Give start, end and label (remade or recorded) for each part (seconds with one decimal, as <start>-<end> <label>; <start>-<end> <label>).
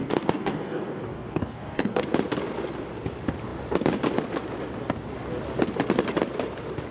0.0-2.0 remade; 2.0-6.9 recorded